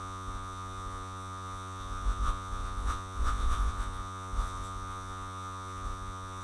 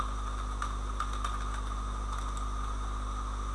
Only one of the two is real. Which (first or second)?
second